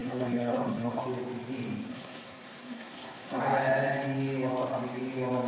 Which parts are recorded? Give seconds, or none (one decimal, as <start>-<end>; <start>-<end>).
1.0-1.9; 3.4-5.5